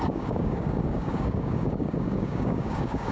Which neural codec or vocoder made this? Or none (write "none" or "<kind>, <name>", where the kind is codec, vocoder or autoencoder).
codec, DAC